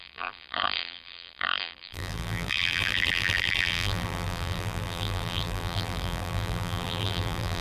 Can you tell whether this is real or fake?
fake